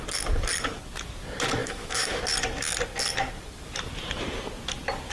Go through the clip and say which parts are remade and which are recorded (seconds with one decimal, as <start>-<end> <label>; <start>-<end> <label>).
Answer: 0.0-1.6 recorded; 1.6-2.2 remade; 2.2-5.1 recorded